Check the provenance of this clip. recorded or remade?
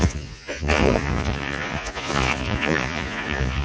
remade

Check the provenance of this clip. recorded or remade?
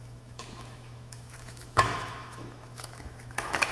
remade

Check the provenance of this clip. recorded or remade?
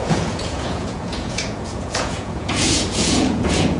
remade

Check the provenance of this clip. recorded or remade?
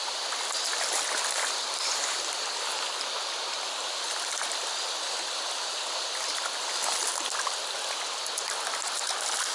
recorded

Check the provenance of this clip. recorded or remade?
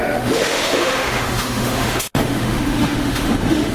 remade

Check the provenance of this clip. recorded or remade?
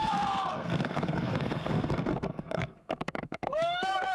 remade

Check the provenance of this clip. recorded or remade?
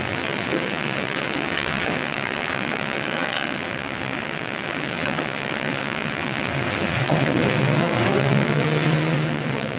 remade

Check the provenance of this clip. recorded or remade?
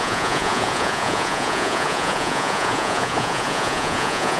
remade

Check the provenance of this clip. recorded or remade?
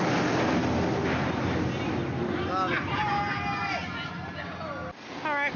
recorded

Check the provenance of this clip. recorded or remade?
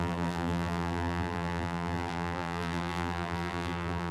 remade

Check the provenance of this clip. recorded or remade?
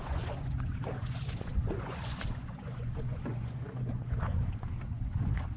remade